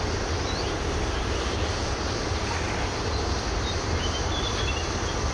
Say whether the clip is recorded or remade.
remade